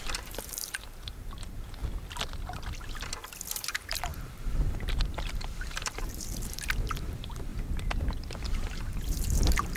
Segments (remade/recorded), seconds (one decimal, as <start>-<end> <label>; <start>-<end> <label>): 0.0-1.8 remade; 1.8-3.5 recorded; 3.5-7.5 remade; 7.5-8.8 recorded; 8.8-9.8 remade